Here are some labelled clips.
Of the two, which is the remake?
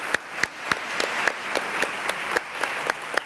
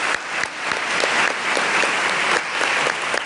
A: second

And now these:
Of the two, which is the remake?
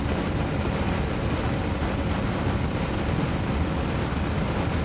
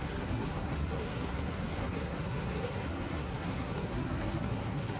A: second